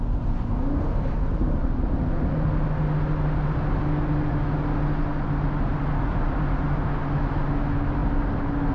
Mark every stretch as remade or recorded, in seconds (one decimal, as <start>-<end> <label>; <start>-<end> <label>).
0.0-8.7 recorded